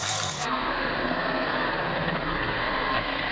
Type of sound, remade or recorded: remade